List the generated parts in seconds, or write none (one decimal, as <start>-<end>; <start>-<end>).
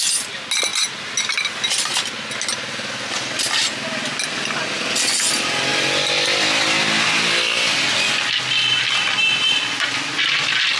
none